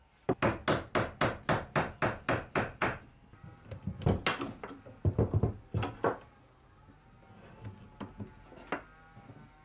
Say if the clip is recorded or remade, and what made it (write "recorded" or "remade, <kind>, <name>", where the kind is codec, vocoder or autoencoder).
recorded